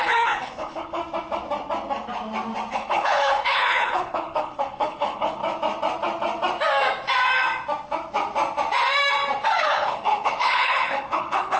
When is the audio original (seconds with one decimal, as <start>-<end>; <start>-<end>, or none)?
1.0-2.7; 5.4-9.6